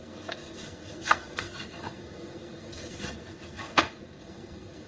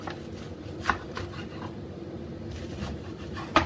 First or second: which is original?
second